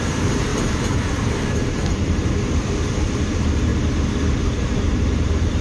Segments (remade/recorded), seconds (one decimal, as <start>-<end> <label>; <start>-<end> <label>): 0.0-3.7 remade; 3.7-4.3 recorded; 4.3-5.6 remade